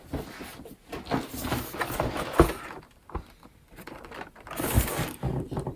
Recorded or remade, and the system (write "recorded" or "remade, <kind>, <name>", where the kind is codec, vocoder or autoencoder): recorded